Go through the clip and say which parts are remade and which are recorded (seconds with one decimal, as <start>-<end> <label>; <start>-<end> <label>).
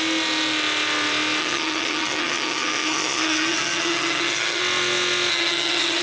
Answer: 0.0-1.4 recorded; 1.4-4.6 remade; 4.6-5.3 recorded; 5.3-6.0 remade